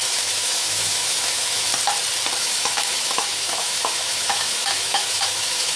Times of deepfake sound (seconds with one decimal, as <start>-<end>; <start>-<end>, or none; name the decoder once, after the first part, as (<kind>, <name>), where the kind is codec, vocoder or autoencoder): 0.0-1.7 (autoencoder, DAC-VAE); 2.4-5.8